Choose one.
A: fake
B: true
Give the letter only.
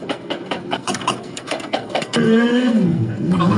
A